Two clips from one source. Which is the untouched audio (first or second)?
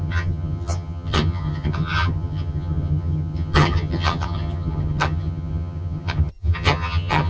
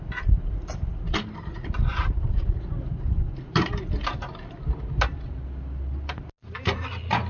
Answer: second